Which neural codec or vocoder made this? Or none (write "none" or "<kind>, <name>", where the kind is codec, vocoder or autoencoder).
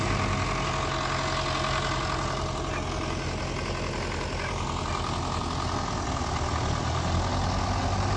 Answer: none